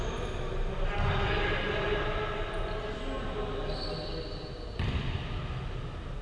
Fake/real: real